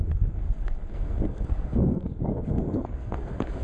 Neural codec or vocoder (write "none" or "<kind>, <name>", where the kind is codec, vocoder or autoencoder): codec, SNAC